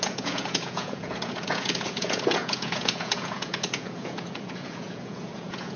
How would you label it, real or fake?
fake